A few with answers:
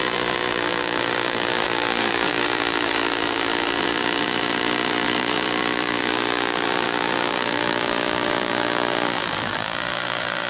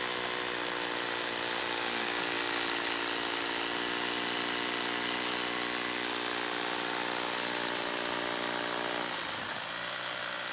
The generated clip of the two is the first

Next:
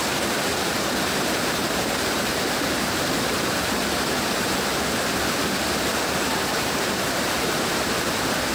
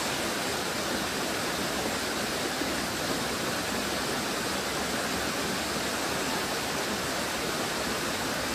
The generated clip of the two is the first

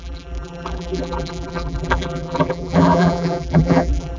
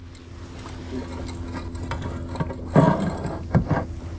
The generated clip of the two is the first